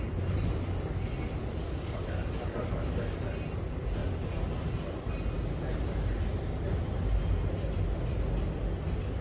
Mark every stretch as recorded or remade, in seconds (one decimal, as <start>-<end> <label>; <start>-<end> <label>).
0.0-1.4 recorded; 1.4-3.2 remade; 3.2-9.2 recorded